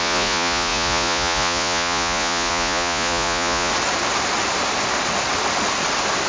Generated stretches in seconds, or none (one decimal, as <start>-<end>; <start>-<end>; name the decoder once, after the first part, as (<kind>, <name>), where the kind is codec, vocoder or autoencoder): 0.0-3.7 (vocoder, Vocos)